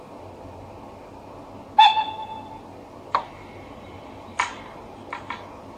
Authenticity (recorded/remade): recorded